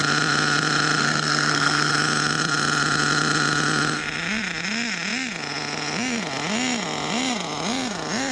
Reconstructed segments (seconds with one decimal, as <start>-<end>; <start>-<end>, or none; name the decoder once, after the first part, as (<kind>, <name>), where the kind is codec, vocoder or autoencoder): 1.0-1.9 (codec, SNAC)